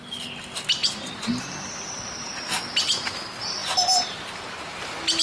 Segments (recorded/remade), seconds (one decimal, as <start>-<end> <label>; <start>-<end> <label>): 0.0-5.2 recorded